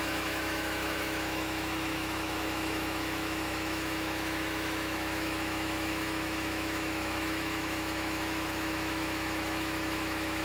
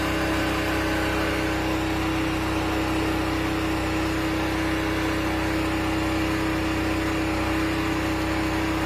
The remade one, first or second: first